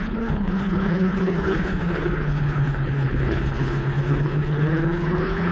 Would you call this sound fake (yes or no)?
yes